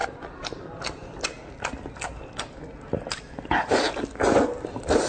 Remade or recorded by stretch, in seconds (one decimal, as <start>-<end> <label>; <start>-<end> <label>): 0.0-0.6 remade; 0.6-5.1 recorded